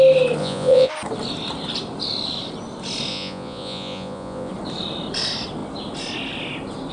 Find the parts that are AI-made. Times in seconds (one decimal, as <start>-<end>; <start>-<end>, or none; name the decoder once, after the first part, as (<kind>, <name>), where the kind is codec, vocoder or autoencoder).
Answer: 0.4-0.9 (vocoder, Vocos); 3.1-4.5